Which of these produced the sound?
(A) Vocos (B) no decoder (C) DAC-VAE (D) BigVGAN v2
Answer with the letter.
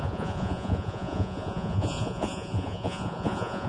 A